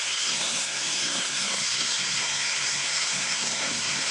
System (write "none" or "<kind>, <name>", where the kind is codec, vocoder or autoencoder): codec, SNAC